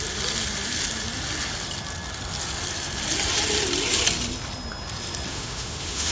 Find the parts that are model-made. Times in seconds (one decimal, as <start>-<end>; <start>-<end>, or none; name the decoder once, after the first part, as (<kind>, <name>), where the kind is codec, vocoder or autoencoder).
5.3-6.1 (autoencoder, DAC-VAE)